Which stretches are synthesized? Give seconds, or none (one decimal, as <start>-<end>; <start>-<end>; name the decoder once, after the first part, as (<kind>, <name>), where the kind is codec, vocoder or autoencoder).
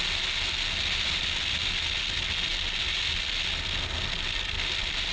none